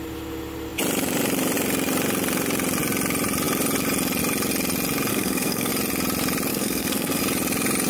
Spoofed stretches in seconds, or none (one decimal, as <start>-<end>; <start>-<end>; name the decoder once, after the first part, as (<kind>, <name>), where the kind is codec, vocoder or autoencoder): 5.1-5.7 (codec, SNAC); 6.5-7.2